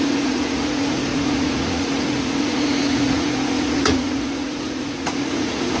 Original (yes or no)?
no